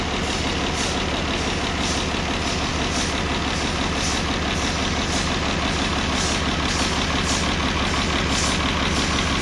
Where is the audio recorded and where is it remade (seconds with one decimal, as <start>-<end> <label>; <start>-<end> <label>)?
0.0-4.8 recorded; 4.8-5.3 remade; 5.3-9.4 recorded